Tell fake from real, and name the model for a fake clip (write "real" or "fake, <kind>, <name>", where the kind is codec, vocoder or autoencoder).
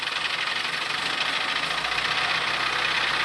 real